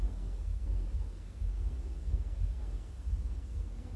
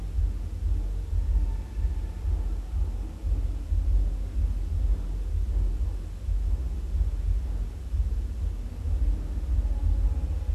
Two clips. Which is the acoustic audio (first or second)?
second